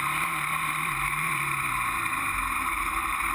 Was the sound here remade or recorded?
remade